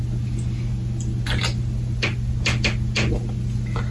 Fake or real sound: real